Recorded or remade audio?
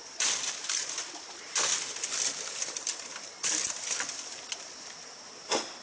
recorded